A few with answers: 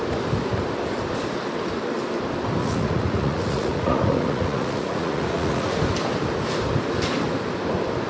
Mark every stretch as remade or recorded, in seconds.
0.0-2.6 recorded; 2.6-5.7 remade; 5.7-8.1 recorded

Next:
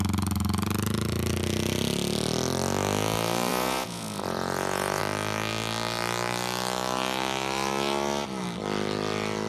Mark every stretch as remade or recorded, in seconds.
0.0-3.5 recorded; 3.5-5.0 remade; 5.0-9.5 recorded

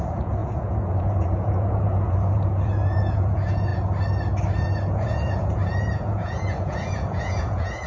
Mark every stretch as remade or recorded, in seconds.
0.0-3.7 remade; 3.7-4.9 recorded; 4.9-7.9 remade

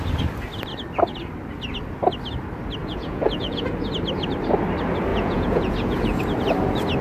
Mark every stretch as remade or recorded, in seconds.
0.0-2.8 recorded; 2.8-3.6 remade; 3.6-5.1 recorded; 5.1-6.2 remade; 6.2-7.0 recorded

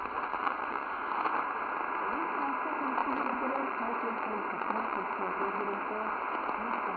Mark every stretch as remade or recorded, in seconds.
0.0-0.4 recorded; 0.4-1.0 remade; 1.0-3.0 recorded; 3.0-5.4 remade; 5.4-7.0 recorded

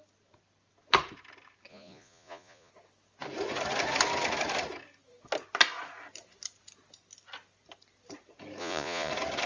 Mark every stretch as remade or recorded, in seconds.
0.0-1.7 recorded; 1.7-2.7 remade; 2.7-8.6 recorded; 8.6-9.1 remade; 9.1-9.5 recorded

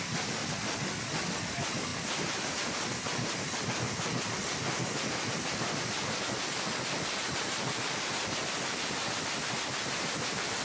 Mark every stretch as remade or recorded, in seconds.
0.0-10.6 recorded

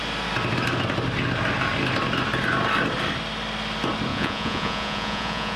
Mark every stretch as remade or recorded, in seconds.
0.0-4.1 recorded; 4.1-5.6 remade